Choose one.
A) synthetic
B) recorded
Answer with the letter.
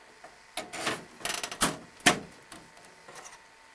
B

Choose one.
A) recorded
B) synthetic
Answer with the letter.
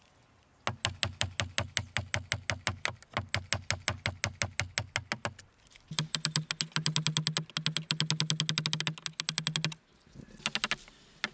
A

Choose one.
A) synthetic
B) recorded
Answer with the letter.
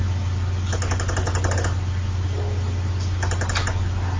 B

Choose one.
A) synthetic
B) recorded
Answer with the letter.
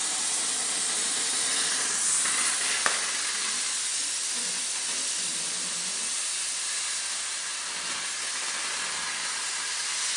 B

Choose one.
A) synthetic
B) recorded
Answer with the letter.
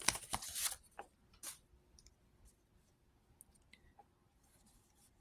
B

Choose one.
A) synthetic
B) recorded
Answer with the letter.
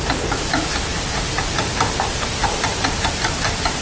B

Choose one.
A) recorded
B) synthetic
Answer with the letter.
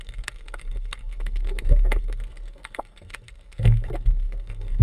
B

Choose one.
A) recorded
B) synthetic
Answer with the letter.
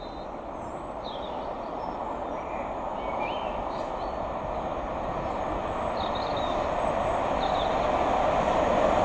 A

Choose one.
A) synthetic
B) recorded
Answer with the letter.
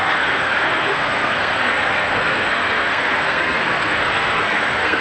A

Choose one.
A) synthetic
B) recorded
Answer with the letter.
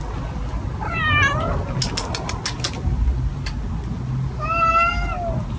B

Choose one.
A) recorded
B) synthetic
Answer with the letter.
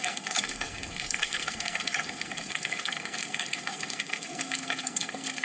B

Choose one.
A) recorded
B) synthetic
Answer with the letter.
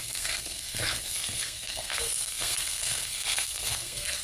B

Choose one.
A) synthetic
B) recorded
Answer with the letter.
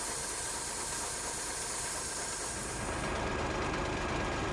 B